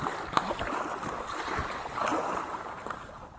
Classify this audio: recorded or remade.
recorded